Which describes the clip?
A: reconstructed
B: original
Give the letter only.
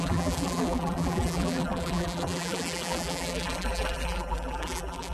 A